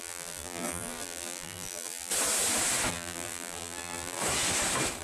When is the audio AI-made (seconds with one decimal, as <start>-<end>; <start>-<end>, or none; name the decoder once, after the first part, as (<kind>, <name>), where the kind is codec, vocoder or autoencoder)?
0.0-2.1 (vocoder, BigVGAN v2); 2.9-4.2